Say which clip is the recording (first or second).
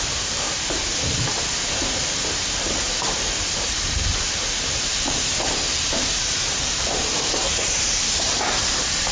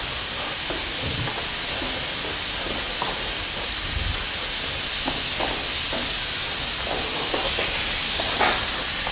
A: second